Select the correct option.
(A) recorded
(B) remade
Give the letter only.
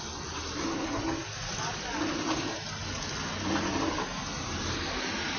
A